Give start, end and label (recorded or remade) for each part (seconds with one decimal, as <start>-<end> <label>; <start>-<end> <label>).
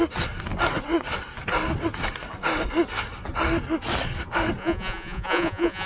0.0-4.6 recorded; 4.6-5.9 remade